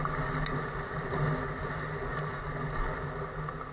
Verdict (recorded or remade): recorded